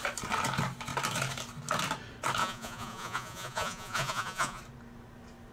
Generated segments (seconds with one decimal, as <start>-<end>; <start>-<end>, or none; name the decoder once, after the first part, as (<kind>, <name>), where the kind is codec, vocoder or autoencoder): 2.4-4.6 (vocoder, Vocos)